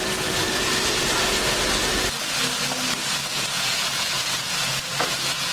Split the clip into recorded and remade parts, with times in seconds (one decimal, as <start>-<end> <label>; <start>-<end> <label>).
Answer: 0.0-3.3 recorded; 3.3-5.5 remade